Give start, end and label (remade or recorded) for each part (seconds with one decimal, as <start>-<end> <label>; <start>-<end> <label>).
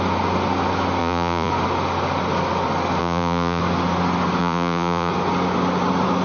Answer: 0.0-1.0 recorded; 1.0-1.5 remade; 1.5-3.0 recorded; 3.0-3.6 remade; 3.6-4.4 recorded; 4.4-5.1 remade; 5.1-6.2 recorded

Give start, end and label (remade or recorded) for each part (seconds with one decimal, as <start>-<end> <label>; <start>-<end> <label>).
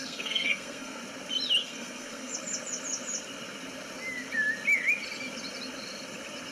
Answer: 0.0-1.0 remade; 1.0-1.6 recorded; 1.6-2.3 remade; 2.3-6.5 recorded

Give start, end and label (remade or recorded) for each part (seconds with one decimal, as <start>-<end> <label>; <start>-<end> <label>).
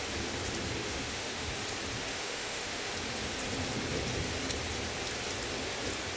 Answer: 0.0-0.8 recorded; 0.8-1.5 remade; 1.5-2.1 recorded; 2.1-2.9 remade; 2.9-6.2 recorded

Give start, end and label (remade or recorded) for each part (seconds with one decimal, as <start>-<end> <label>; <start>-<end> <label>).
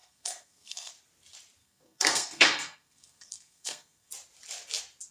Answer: 0.0-0.9 remade; 0.9-1.6 recorded; 1.6-4.1 remade; 4.1-5.1 recorded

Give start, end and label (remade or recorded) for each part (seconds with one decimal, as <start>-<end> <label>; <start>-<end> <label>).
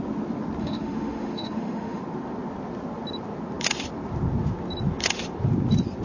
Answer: 0.0-0.6 recorded; 0.6-2.0 remade; 2.0-6.0 recorded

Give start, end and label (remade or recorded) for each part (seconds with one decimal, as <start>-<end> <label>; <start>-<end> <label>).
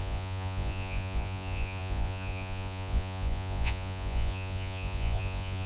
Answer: 0.0-5.7 remade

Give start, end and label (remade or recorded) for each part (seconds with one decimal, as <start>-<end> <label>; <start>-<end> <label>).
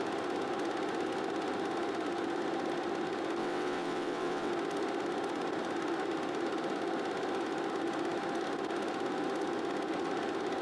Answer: 0.0-3.4 recorded; 3.4-4.5 remade; 4.5-10.6 recorded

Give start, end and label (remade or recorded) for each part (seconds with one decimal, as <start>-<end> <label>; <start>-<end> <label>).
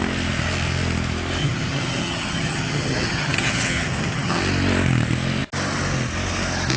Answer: 0.0-1.4 recorded; 1.4-4.4 remade; 4.4-6.8 recorded